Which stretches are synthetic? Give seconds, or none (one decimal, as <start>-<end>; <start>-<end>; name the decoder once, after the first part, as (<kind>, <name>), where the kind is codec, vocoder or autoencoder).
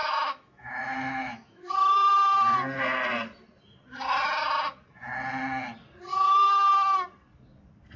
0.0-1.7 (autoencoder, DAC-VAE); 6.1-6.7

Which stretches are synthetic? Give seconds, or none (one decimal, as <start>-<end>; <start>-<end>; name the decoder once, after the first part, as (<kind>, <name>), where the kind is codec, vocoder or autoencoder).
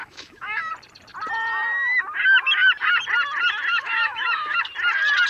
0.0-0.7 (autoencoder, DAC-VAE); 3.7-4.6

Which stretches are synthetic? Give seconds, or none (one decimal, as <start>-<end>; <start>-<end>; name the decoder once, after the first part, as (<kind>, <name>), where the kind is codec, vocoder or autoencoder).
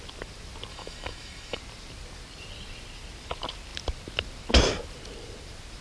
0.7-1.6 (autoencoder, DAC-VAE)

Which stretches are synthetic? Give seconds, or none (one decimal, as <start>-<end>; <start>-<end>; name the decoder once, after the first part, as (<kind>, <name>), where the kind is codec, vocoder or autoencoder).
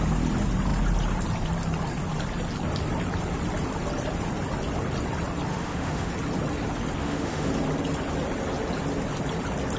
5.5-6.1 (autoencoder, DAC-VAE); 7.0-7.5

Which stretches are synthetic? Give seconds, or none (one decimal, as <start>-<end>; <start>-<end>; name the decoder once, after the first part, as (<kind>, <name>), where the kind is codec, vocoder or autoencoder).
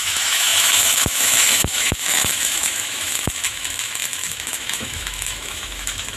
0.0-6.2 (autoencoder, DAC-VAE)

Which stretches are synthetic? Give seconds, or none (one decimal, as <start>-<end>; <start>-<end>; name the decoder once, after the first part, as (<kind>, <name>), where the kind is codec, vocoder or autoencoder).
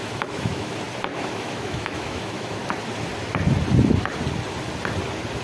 0.0-0.7 (autoencoder, DAC-VAE); 1.1-2.6